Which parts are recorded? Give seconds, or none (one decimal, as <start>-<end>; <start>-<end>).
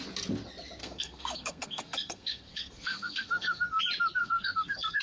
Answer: 0.0-0.8; 3.8-4.2